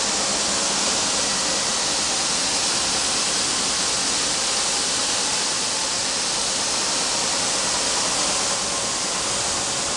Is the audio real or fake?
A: real